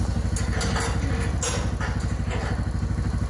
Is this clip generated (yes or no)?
no